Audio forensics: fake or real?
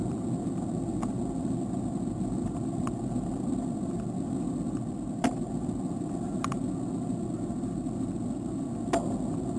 real